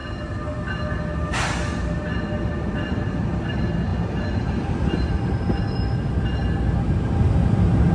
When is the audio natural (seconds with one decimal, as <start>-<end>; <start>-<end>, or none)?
0.0-7.9